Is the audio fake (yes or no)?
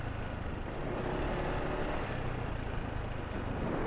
no